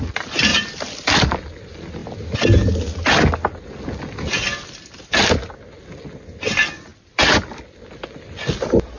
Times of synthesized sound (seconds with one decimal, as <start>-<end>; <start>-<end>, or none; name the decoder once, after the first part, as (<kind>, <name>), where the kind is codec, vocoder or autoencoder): 0.5-1.2 (vocoder, BigVGAN v2)